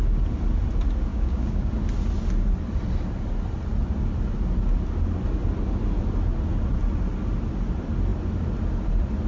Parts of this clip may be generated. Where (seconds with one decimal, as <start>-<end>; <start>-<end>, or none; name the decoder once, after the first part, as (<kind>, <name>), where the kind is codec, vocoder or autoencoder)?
1.1-1.7 (codec, DAC)